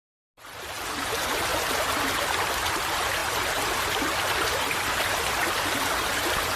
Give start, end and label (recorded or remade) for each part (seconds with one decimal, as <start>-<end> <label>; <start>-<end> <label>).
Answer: 0.0-6.6 recorded